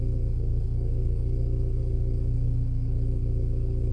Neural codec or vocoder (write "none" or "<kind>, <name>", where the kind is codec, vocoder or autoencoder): codec, DAC